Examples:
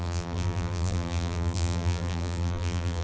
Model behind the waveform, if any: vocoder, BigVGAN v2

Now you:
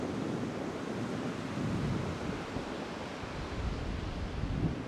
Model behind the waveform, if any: none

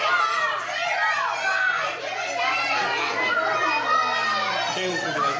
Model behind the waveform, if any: none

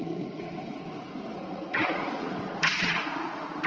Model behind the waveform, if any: vocoder, Vocos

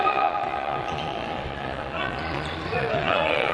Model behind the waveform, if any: vocoder, Vocos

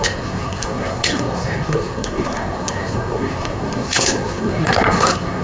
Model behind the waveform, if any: codec, SNAC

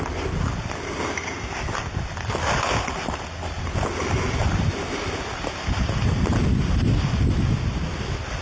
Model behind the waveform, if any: none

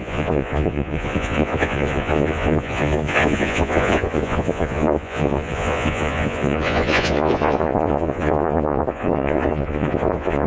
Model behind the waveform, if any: vocoder, Vocos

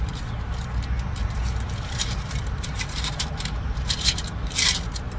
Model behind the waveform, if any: vocoder, BigVGAN v2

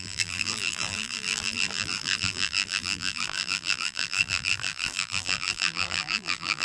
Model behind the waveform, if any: vocoder, BigVGAN v2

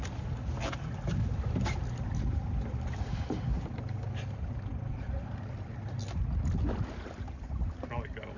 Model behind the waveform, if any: none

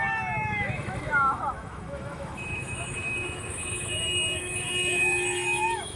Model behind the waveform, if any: autoencoder, DAC-VAE